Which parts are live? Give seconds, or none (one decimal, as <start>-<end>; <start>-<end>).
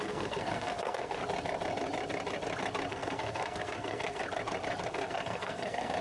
1.2-2.9; 4.2-4.9